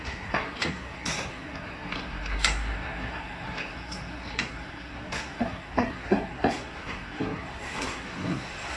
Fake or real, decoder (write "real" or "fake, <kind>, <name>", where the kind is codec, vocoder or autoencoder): fake, codec, SNAC